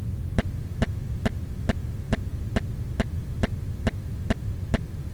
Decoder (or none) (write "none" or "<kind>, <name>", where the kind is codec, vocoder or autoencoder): none